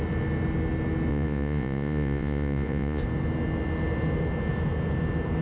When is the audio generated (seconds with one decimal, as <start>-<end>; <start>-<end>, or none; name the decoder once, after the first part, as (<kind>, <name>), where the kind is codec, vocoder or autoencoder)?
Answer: 1.1-3.0 (vocoder, Vocos)

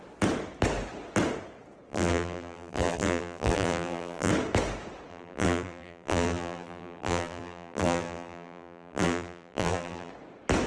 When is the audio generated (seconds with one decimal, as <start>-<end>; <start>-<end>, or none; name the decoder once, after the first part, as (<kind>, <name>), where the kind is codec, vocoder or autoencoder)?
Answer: 1.9-4.3 (vocoder, BigVGAN v2); 5.1-10.1

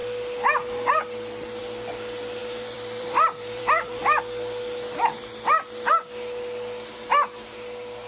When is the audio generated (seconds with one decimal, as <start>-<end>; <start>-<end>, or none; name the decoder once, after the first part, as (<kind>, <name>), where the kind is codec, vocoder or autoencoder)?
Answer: 2.4-4.2 (vocoder, BigVGAN v2)

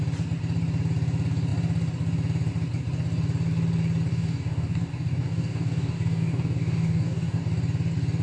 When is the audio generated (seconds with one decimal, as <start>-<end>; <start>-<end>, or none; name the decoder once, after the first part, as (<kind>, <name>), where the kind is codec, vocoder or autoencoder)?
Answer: 4.1-7.5 (codec, DAC)

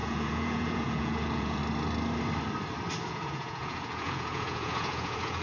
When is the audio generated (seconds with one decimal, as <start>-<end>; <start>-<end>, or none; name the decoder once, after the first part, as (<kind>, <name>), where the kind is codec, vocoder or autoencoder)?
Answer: 0.0-1.6 (vocoder, Vocos); 3.1-5.4

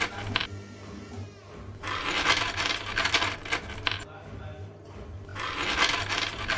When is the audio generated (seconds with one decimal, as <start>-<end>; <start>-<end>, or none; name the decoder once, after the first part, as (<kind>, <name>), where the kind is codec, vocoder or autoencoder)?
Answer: none